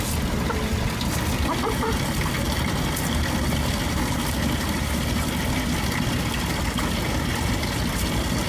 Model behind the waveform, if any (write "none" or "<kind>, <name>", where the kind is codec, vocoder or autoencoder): none